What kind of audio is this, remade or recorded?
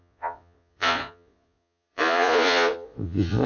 remade